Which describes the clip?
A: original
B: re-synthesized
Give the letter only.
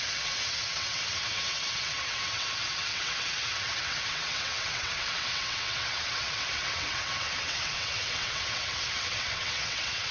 B